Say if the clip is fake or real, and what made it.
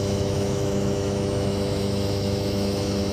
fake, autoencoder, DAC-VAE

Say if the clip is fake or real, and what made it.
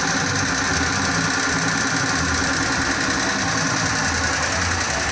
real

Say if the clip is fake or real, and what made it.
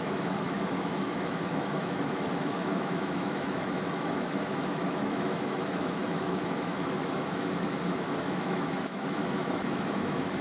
fake, autoencoder, DAC-VAE